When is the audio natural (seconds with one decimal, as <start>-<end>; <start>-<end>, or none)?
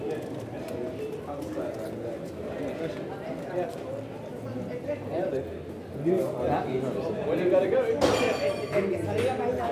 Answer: 0.0-9.7